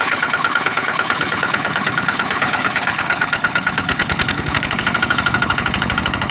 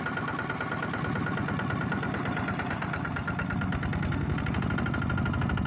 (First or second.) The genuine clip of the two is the second